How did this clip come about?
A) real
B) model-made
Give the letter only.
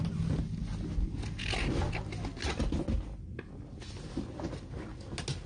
A